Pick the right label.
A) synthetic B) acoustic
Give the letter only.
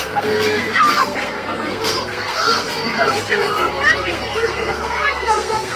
A